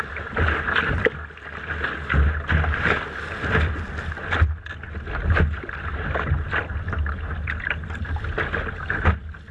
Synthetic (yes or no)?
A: no